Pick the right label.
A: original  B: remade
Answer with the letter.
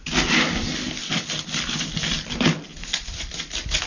A